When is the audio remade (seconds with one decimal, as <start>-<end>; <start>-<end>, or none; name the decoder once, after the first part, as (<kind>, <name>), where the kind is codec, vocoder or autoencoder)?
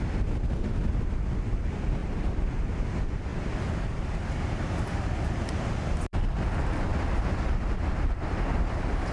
2.0-2.7 (vocoder, BigVGAN v2); 3.3-4.0